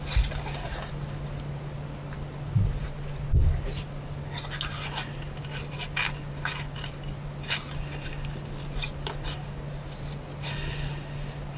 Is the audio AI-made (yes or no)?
no